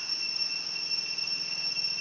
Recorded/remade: recorded